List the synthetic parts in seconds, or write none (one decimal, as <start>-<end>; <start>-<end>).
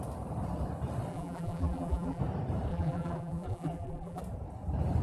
1.1-2.2; 2.7-4.2